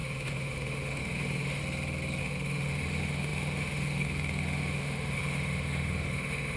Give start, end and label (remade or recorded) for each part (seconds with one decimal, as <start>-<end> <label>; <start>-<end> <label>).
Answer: 0.0-1.6 remade; 1.6-2.2 recorded; 2.2-6.6 remade